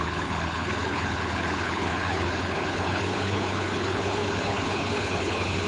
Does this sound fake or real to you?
fake